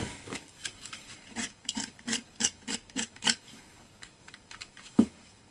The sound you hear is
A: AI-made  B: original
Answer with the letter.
A